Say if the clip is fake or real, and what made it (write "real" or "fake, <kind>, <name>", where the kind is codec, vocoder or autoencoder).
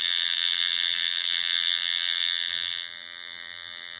fake, vocoder, BigVGAN v2